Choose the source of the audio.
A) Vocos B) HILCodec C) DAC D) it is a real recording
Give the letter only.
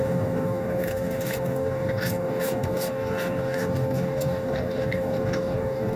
C